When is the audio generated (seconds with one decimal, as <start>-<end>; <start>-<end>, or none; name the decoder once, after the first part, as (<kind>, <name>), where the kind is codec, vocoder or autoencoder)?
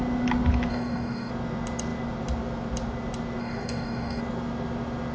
0.7-1.3 (codec, DAC); 3.4-4.2